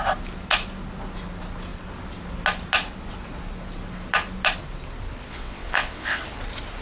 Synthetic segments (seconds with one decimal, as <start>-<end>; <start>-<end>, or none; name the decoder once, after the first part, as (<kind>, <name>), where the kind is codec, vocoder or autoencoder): 5.3-6.2 (vocoder, WaveNeXt)